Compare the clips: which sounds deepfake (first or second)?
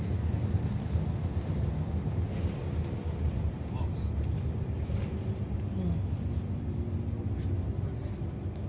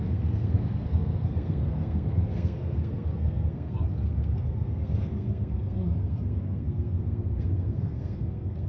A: second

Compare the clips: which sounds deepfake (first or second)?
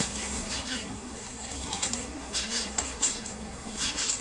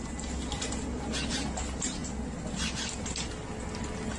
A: first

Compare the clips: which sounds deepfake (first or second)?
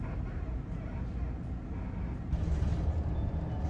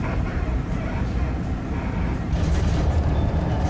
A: second